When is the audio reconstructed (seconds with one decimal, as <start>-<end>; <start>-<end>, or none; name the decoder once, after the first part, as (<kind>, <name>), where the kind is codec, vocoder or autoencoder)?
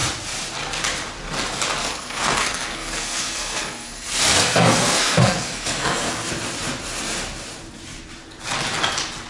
1.8-6.3 (codec, SNAC)